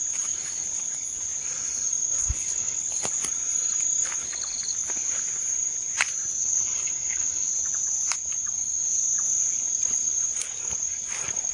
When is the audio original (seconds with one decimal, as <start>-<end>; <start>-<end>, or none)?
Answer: 0.0-2.2; 2.8-6.4; 7.5-11.5